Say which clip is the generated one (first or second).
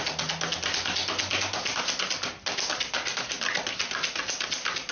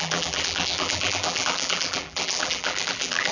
second